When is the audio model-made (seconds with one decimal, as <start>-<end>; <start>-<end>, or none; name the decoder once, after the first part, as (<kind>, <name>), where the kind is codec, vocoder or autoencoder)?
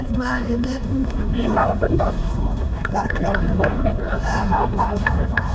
0.0-5.5 (codec, SNAC)